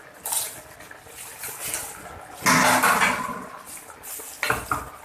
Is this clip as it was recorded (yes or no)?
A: yes